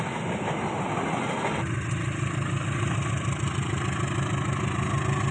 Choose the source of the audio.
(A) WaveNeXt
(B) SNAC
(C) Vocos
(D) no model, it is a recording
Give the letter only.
D